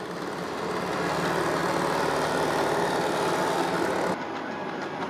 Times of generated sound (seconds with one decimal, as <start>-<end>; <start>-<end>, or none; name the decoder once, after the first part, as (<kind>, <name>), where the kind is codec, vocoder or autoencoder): none